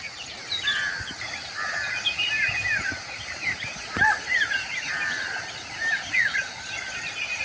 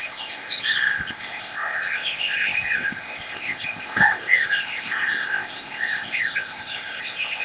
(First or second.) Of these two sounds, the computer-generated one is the second